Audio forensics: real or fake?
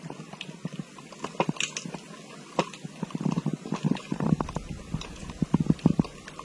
real